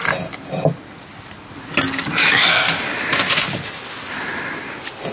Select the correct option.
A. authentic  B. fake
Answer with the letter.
A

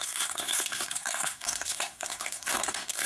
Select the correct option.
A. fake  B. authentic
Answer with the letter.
A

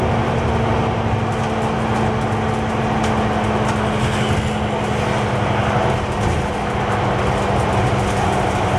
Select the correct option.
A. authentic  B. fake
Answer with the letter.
A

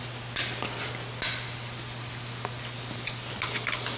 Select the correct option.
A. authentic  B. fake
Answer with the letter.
A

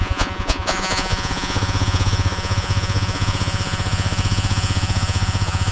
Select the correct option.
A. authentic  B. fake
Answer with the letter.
B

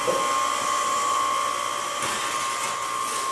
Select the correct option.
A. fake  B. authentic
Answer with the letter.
B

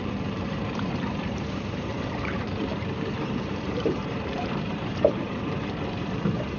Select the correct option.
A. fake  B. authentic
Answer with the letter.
A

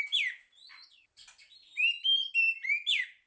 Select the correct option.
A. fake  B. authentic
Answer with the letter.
B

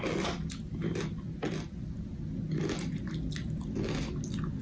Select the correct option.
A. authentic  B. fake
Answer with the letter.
A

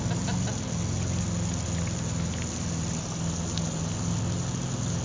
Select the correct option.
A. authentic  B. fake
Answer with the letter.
A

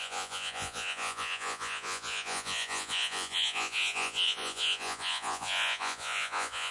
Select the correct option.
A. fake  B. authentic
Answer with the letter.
A